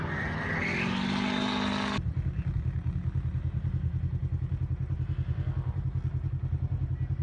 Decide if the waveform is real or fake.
real